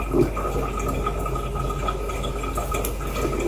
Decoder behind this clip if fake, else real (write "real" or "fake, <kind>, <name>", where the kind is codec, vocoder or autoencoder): real